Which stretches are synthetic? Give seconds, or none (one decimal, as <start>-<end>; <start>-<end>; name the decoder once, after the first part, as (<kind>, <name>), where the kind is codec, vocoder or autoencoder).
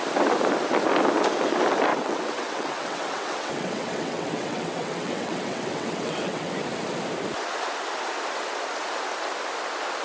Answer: 1.9-6.5 (vocoder, WaveNeXt)